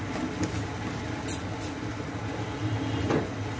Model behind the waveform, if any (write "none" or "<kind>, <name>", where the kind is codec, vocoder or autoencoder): none